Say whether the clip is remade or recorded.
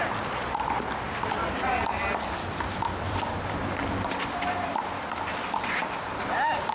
remade